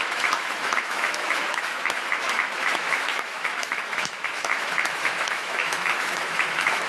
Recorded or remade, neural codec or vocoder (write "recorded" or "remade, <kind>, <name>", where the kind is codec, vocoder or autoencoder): remade, autoencoder, DAC-VAE